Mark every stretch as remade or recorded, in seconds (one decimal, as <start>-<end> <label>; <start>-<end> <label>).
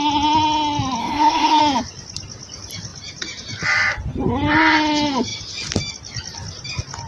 0.0-1.0 recorded; 1.0-1.6 remade; 1.6-7.1 recorded